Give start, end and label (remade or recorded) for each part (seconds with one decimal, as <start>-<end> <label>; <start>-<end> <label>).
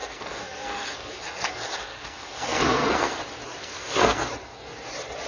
0.0-3.2 remade; 3.2-3.6 recorded; 3.6-4.3 remade; 4.3-5.3 recorded